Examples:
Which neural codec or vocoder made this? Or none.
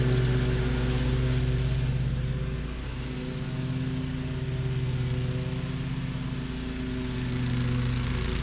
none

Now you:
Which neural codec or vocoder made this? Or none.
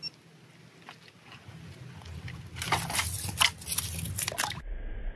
none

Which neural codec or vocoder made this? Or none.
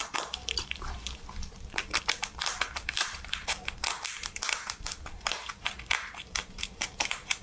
vocoder, BigVGAN v2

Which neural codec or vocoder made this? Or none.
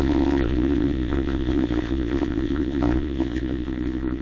vocoder, Vocos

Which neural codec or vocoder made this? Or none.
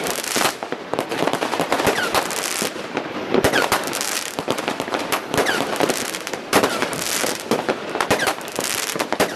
vocoder, BigVGAN v2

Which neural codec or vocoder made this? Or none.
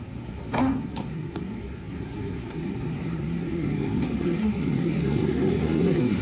codec, SNAC